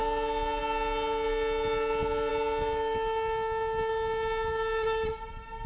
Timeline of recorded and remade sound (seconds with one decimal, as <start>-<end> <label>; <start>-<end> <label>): 0.0-5.7 recorded